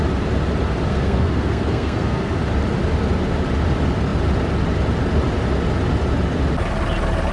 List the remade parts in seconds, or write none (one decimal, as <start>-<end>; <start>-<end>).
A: 0.9-2.4